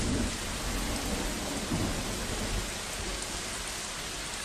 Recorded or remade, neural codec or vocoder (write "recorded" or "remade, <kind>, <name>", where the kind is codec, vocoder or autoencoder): recorded